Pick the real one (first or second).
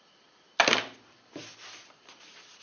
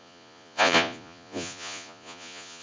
first